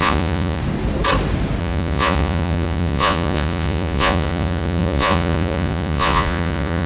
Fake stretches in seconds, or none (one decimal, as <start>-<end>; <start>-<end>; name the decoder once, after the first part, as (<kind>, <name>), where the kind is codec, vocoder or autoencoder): 0.0-0.6 (vocoder, Vocos); 1.6-6.9